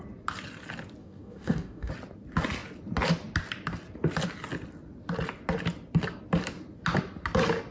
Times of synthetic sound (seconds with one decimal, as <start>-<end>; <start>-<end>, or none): 1.0-1.9